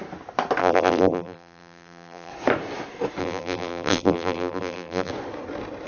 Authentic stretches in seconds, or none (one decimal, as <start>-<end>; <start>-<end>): 0.0-0.6; 2.3-3.2; 5.1-5.9